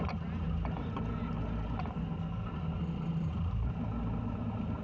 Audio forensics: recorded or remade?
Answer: recorded